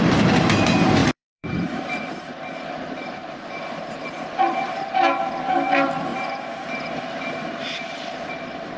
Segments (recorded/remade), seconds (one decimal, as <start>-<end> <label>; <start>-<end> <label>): 0.0-1.0 recorded; 1.0-4.4 remade; 4.4-6.1 recorded; 6.1-8.4 remade; 8.4-8.8 recorded